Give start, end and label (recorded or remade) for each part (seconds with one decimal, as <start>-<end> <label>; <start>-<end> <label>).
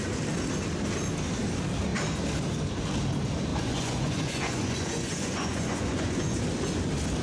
0.0-3.5 recorded; 3.5-6.4 remade; 6.4-7.2 recorded